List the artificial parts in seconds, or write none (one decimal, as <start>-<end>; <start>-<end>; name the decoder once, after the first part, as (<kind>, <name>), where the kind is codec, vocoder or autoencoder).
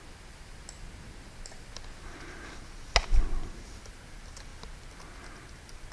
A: none